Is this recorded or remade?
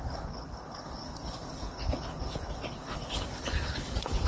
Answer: remade